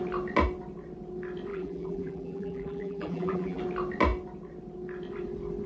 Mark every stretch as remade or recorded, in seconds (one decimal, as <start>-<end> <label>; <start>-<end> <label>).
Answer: 0.0-1.5 recorded; 1.5-3.6 remade; 3.6-5.7 recorded